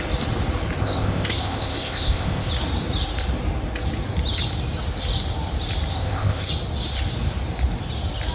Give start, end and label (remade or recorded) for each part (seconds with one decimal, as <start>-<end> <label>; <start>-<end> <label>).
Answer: 0.0-0.8 recorded; 0.8-2.5 remade; 2.5-5.9 recorded; 5.9-6.5 remade; 6.5-8.3 recorded